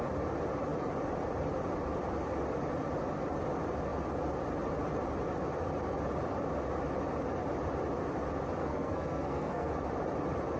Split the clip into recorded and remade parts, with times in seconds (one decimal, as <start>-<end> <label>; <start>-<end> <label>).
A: 0.0-8.6 recorded; 8.6-9.7 remade; 9.7-10.6 recorded